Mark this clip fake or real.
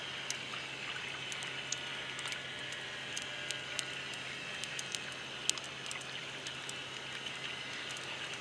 real